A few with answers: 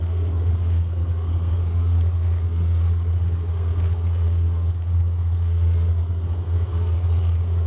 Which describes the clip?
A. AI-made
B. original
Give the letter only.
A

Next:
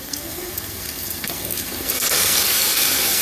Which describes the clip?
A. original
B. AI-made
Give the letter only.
B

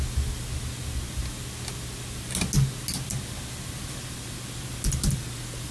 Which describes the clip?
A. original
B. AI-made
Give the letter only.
A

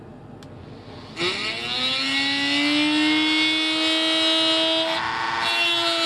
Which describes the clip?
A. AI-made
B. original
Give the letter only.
B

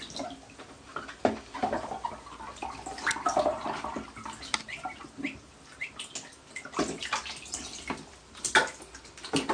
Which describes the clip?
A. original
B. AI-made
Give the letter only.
A